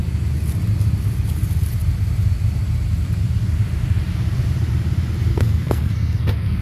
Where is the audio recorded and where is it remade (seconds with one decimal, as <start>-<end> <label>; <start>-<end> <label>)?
0.0-5.3 recorded; 5.3-6.6 remade